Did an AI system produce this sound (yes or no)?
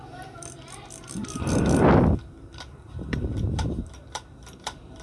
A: yes